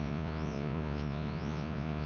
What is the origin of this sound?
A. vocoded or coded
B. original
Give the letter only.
A